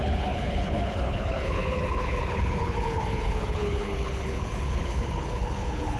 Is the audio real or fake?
fake